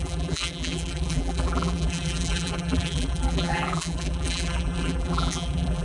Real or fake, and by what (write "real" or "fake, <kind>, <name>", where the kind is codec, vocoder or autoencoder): fake, vocoder, BigVGAN v2